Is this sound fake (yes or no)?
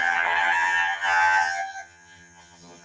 yes